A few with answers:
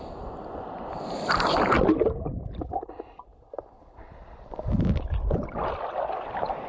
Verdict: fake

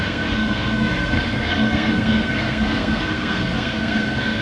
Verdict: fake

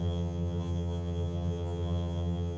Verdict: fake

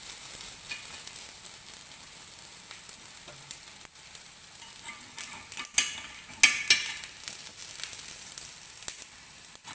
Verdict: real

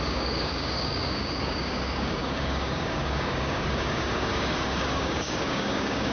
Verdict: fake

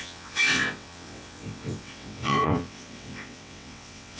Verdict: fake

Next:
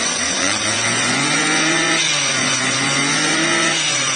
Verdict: fake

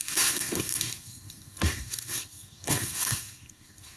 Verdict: fake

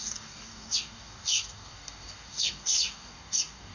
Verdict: fake